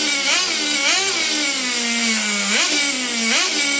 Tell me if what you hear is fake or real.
real